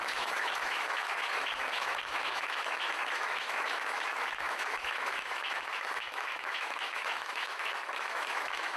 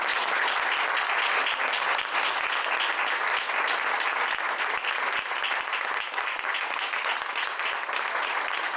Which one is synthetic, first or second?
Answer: first